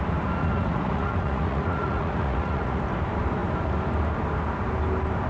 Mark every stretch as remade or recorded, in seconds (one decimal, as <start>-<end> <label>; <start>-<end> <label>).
0.0-0.4 recorded; 0.4-2.8 remade; 2.8-5.3 recorded